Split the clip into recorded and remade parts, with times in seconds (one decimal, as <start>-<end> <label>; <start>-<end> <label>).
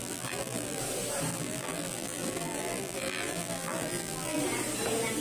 0.0-0.8 remade; 0.8-1.3 recorded; 1.3-4.4 remade; 4.4-5.2 recorded